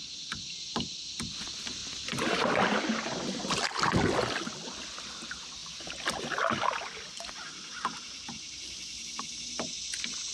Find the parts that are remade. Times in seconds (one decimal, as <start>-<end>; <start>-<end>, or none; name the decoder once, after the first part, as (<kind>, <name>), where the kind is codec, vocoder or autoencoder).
none